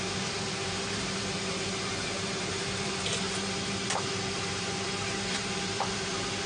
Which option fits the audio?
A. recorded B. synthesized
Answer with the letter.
B